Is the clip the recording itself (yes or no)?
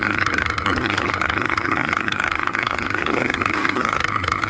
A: no